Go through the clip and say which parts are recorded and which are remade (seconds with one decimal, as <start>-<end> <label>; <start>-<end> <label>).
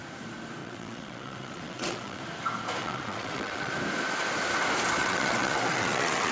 0.0-0.6 recorded; 0.6-2.2 remade; 2.2-2.8 recorded; 2.8-3.7 remade; 3.7-5.0 recorded; 5.0-6.3 remade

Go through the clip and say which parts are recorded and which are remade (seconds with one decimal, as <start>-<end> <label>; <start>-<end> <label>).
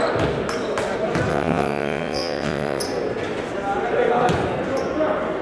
0.0-1.3 recorded; 1.3-2.8 remade; 2.8-5.4 recorded